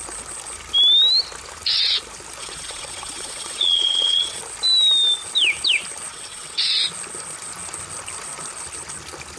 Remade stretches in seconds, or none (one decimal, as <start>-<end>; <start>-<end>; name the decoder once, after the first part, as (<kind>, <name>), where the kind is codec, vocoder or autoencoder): 2.4-4.4 (vocoder, WaveNeXt); 6.1-6.6